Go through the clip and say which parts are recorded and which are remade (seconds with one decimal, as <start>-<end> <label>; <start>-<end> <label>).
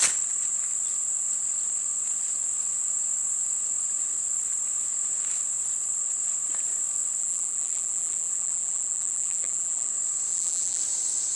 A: 0.0-7.2 recorded; 7.2-9.9 remade; 9.9-10.3 recorded; 10.3-10.8 remade; 10.8-11.4 recorded